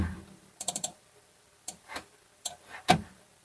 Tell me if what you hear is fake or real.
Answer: fake